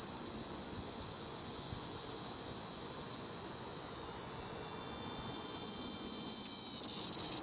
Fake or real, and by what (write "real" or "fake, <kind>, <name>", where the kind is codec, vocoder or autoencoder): fake, vocoder, Vocos